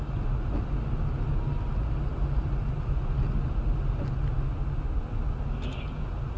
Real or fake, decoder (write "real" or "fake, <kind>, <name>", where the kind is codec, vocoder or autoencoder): real